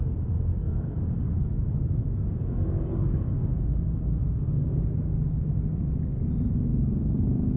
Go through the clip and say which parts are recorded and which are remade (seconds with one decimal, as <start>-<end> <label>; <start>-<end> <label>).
0.0-0.6 recorded; 0.6-4.8 remade; 4.8-7.6 recorded